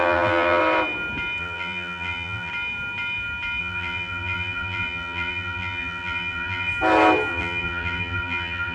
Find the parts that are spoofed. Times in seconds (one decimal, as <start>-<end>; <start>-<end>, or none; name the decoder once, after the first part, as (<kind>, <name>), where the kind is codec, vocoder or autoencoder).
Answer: 0.0-0.6 (vocoder, BigVGAN v2); 1.4-2.5; 3.6-6.7; 7.3-8.7